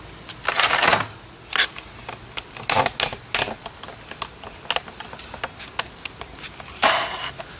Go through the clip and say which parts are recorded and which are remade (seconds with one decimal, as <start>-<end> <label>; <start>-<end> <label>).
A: 0.0-7.6 recorded